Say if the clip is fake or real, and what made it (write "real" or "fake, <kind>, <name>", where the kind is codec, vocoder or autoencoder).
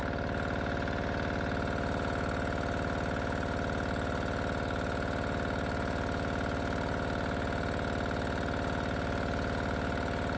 real